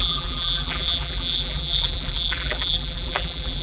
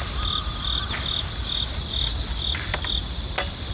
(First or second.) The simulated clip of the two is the first